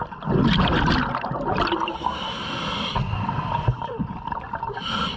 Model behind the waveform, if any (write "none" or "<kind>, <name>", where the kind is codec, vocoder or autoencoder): none